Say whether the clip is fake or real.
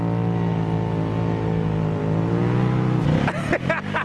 real